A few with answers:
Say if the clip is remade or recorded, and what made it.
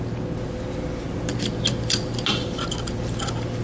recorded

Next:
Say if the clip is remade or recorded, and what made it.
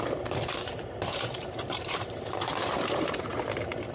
remade, vocoder, BigVGAN v2